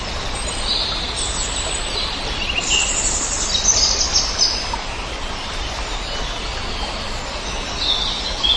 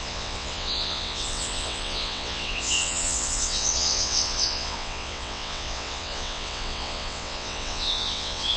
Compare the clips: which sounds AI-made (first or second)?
second